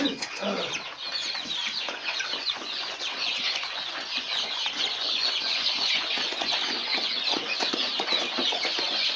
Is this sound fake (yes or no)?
yes